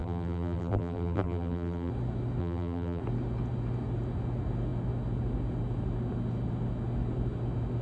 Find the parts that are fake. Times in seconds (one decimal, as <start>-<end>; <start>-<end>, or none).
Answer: 0.0-1.9; 2.4-3.0